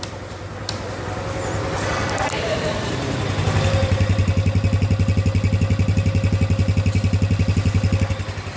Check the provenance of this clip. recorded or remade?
recorded